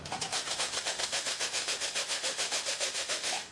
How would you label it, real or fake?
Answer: fake